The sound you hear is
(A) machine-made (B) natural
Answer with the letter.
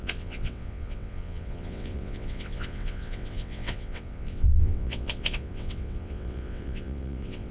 A